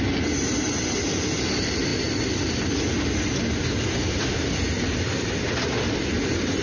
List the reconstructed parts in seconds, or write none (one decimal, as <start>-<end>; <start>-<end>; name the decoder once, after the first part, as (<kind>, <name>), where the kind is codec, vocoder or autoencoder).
none

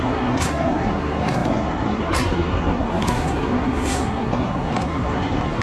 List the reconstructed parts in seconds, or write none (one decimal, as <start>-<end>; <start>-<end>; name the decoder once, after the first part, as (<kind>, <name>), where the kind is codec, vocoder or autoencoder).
0.0-5.6 (codec, SNAC)